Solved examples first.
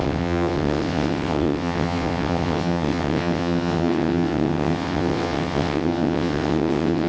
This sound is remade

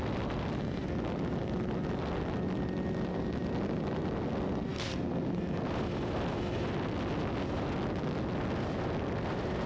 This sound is recorded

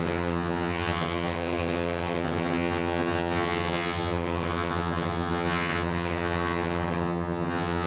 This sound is remade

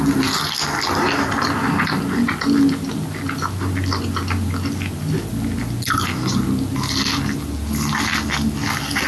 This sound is recorded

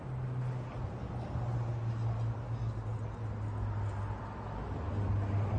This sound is recorded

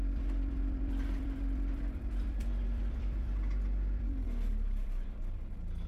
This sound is remade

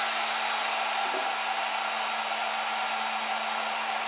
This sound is recorded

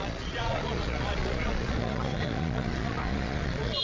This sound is remade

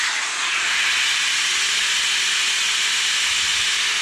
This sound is recorded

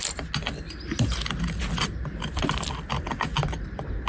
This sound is recorded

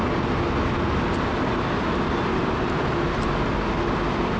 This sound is recorded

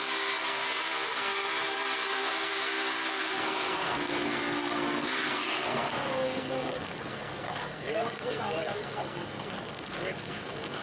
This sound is remade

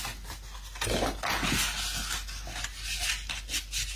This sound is recorded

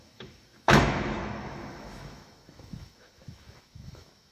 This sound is remade